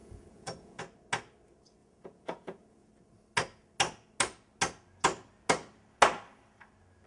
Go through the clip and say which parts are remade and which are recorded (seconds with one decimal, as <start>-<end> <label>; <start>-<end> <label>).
0.0-0.8 remade; 0.8-1.8 recorded; 1.8-2.9 remade; 2.9-7.1 recorded